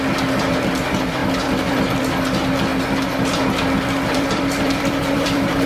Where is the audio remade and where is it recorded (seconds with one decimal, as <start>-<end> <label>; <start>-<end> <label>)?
0.0-1.2 recorded; 1.2-2.1 remade; 2.1-2.7 recorded; 2.7-5.7 remade